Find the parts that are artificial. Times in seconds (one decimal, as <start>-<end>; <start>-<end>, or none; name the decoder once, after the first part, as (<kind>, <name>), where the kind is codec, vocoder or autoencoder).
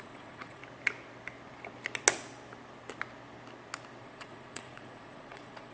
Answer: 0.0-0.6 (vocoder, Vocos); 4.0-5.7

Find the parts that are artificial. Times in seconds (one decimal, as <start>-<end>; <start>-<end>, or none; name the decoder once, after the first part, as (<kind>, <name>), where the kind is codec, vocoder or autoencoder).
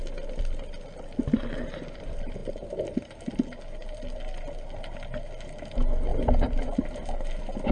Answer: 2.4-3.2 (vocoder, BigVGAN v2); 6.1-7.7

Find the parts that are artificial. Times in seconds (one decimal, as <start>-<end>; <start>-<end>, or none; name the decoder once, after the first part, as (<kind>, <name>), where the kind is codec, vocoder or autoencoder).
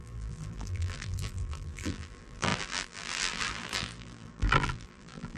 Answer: 0.0-5.4 (vocoder, BigVGAN v2)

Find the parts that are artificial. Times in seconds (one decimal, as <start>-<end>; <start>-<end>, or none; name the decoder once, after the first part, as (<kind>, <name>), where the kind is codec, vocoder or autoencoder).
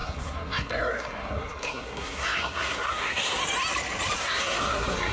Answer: 0.0-3.4 (codec, SNAC); 4.2-5.1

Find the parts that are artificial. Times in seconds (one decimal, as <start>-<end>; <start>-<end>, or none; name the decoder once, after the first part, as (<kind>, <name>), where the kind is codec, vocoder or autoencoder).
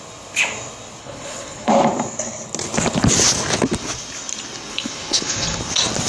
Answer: 1.0-1.7 (codec, HILCodec); 4.7-5.6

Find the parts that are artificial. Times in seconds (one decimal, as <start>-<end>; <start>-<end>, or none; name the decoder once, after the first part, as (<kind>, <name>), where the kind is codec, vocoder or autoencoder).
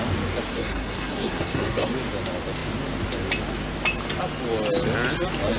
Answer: 0.5-1.9 (codec, SNAC)